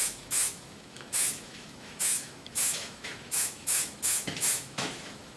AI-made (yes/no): yes